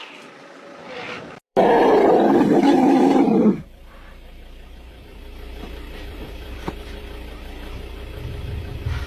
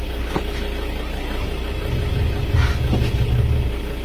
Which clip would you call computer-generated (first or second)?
first